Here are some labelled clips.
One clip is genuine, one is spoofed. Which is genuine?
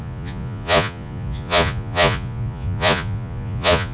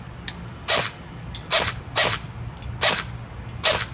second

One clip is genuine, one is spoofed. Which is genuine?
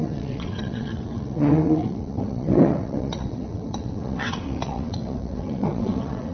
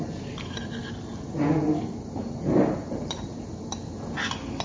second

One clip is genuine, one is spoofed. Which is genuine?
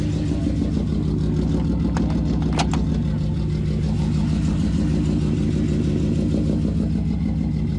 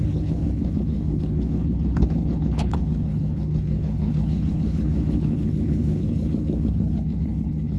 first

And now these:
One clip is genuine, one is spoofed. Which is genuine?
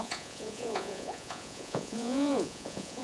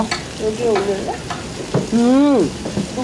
second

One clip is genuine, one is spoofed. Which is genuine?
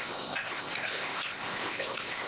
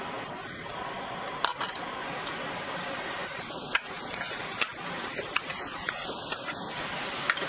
second